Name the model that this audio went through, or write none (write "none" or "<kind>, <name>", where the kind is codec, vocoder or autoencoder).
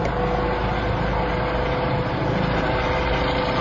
none